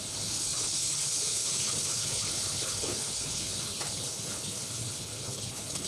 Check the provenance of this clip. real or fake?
fake